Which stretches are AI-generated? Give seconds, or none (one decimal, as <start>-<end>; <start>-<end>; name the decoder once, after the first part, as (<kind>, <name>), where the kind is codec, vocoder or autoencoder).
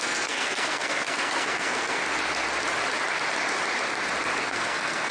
0.0-2.0 (codec, SNAC); 4.4-5.1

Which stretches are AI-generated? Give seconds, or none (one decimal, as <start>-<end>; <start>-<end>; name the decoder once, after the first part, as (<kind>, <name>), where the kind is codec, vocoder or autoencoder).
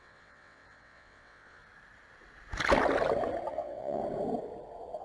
0.0-1.6 (vocoder, WaveNeXt); 3.5-4.0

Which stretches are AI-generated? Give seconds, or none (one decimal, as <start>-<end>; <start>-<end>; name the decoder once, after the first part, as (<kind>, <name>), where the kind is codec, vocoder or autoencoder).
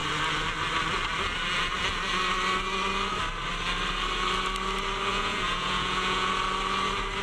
5.1-6.3 (vocoder, Vocos)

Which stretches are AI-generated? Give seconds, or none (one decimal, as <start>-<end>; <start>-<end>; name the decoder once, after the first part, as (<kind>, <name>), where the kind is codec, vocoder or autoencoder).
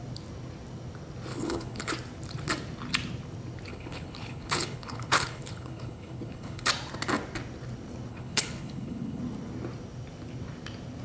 1.3-1.9 (codec, HILCodec); 3.7-6.7; 8.1-9.2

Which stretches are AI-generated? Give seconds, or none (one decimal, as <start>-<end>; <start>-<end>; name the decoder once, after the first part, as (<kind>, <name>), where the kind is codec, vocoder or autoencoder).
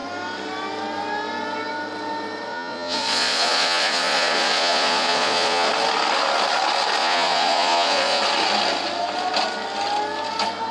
2.5-5.7 (vocoder, Vocos); 7.0-8.2